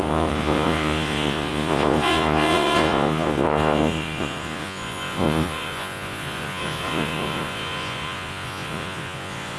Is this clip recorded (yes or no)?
no